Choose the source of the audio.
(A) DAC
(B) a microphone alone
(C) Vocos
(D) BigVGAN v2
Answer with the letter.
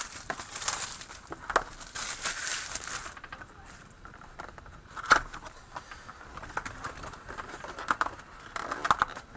B